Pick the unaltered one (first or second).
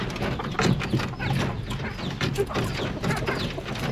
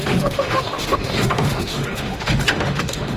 first